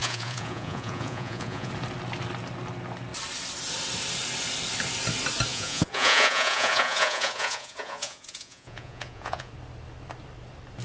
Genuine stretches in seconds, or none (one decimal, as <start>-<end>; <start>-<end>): 1.7-5.5; 9.5-10.8